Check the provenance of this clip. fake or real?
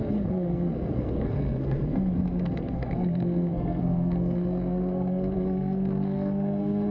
fake